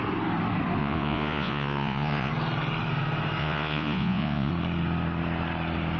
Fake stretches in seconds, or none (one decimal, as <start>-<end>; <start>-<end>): 0.8-2.3; 3.4-4.5